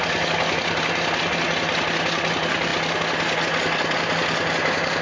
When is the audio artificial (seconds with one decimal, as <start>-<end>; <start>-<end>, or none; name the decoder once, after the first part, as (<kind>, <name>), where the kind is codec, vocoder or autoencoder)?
none